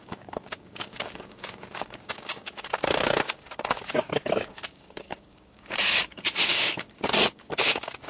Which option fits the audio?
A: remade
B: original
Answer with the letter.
A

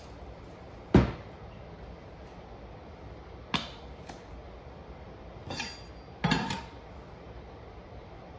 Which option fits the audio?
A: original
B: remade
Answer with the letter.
A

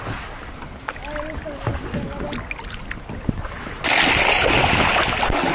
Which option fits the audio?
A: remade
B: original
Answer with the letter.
B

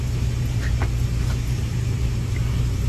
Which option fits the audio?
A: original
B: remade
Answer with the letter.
A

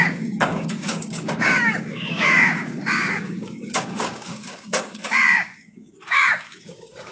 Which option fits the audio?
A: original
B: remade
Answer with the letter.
B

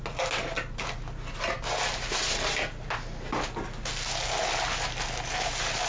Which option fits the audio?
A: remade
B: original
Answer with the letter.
B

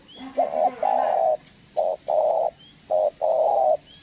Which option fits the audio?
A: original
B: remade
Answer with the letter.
A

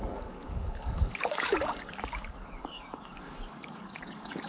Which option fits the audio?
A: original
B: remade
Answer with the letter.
B